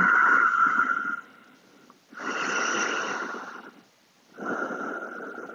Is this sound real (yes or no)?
yes